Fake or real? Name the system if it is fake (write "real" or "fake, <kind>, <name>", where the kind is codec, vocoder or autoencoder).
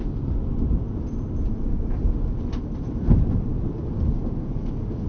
real